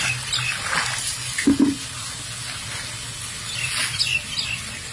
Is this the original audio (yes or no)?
yes